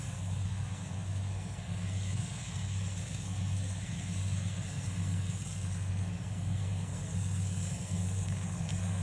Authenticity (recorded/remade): remade